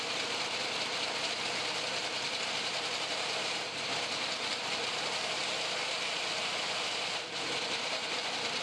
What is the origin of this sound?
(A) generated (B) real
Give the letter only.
A